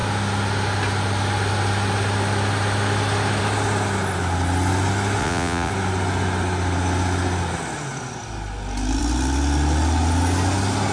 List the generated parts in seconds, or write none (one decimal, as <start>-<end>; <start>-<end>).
5.2-5.7